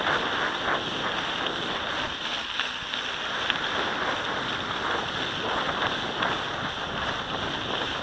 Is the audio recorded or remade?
recorded